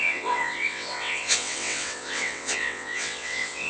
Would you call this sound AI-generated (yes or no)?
yes